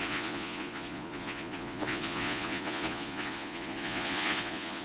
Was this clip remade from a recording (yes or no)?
yes